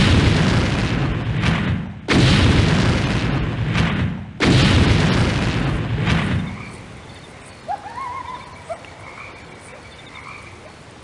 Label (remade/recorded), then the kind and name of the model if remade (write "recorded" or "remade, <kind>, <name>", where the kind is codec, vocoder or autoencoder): recorded